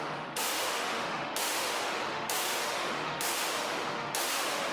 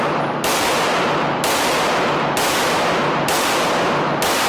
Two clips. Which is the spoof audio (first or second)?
first